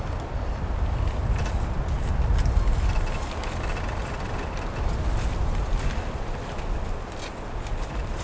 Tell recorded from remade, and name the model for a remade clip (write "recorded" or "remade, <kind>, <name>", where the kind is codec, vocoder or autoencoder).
recorded